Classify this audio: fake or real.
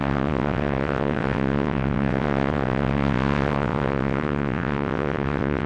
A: fake